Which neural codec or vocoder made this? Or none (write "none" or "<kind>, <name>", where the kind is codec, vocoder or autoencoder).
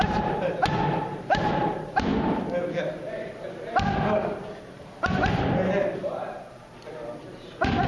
vocoder, BigVGAN v2